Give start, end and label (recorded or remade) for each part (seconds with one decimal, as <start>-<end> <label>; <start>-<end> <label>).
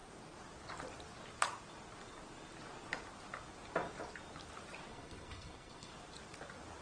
0.0-4.9 recorded; 4.9-5.9 remade; 5.9-6.8 recorded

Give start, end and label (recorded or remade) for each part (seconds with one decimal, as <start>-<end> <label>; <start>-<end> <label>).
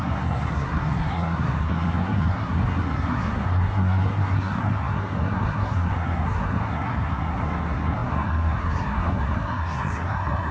0.0-10.5 remade